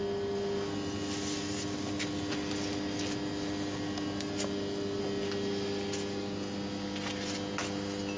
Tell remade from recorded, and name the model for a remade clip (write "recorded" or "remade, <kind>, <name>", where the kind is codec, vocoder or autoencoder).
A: recorded